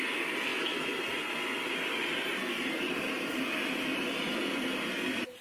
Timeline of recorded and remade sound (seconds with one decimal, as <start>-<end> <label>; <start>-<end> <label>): 0.0-5.4 recorded